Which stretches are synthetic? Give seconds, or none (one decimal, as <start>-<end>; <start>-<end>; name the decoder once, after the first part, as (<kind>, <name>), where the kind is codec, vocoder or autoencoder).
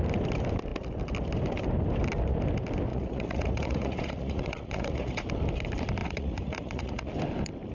2.9-5.3 (vocoder, Vocos); 6.0-7.1